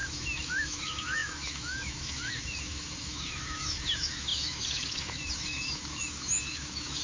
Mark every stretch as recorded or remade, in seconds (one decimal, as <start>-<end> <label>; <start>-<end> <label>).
0.0-7.0 remade